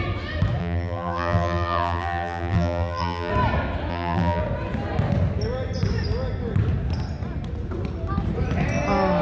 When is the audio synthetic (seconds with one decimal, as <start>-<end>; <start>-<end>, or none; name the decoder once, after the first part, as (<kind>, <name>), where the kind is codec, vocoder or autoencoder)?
0.6-3.3 (vocoder, BigVGAN v2); 3.9-4.4